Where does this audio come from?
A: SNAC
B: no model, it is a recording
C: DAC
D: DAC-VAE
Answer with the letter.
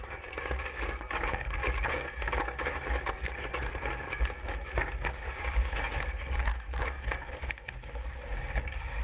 C